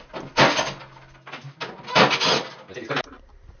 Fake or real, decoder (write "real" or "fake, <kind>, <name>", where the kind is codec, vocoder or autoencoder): real